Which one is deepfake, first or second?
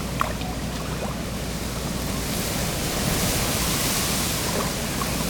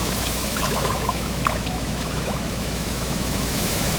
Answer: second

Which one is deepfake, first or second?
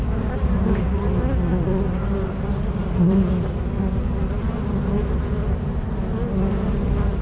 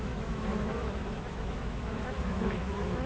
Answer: second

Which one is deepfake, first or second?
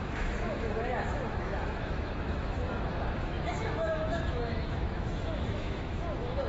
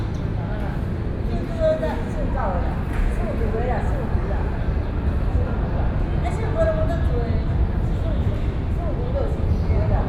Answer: first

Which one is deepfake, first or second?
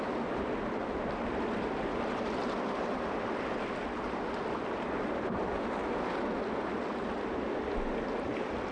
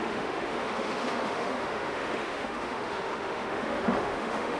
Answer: second